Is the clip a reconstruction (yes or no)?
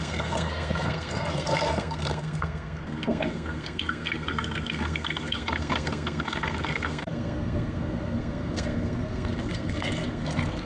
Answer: yes